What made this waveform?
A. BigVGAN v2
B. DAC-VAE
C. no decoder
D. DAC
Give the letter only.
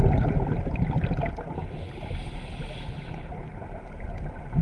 C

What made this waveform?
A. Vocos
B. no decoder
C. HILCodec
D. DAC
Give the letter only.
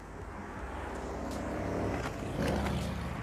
B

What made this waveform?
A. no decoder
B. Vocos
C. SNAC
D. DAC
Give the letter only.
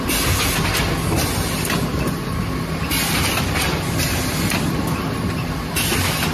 A